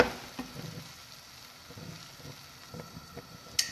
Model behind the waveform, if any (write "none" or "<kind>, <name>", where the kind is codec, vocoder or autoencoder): none